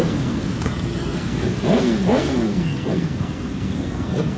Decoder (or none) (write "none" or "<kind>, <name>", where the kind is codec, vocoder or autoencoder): codec, SNAC